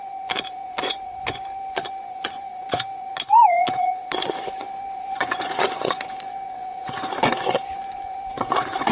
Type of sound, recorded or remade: remade